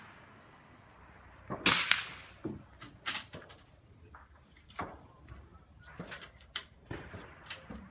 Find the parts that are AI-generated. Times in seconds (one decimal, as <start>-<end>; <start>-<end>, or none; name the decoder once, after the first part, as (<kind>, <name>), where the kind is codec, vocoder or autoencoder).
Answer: 5.5-7.2 (vocoder, BigVGAN v2)